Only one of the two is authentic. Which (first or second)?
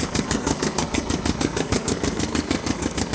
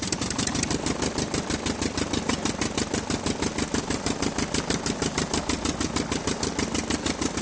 second